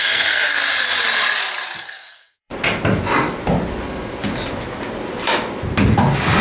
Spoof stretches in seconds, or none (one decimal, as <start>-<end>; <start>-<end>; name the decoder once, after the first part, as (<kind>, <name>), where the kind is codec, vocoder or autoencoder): 0.0-0.6 (codec, SNAC); 1.8-2.5

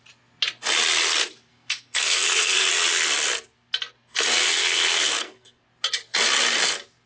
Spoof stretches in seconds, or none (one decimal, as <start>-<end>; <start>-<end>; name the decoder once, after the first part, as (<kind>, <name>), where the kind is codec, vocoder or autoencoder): 1.5-2.7 (codec, SNAC); 4.4-5.6